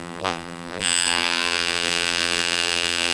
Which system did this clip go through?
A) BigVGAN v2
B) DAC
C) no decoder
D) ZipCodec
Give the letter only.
A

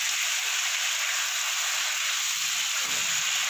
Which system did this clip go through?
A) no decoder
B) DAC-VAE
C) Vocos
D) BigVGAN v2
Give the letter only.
A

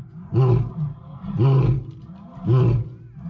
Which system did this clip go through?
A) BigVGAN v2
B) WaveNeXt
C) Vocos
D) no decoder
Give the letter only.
D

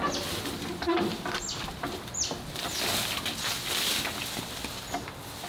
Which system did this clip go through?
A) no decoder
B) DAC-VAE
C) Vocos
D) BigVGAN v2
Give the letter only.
A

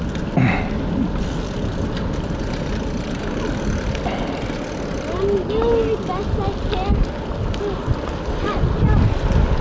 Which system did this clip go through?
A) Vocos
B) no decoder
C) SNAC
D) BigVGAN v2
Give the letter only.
B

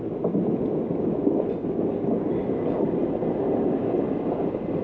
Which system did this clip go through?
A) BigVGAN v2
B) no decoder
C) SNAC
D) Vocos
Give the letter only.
B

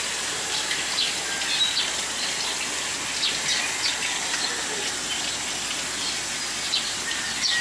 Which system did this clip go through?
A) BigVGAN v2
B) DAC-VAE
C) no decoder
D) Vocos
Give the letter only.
C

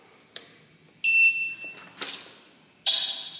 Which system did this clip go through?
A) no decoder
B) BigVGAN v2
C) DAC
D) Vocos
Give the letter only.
A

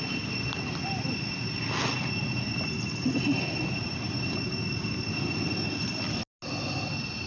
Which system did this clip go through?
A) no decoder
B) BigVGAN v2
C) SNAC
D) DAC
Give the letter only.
A